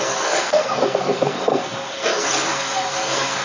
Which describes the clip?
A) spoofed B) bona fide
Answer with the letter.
A